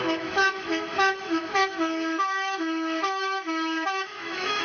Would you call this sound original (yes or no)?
no